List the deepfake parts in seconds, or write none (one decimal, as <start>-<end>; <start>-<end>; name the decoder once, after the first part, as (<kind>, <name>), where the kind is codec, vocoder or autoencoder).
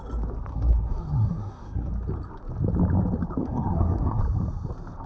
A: 0.5-1.9 (codec, SNAC); 3.4-4.2